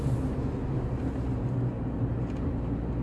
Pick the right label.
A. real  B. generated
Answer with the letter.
A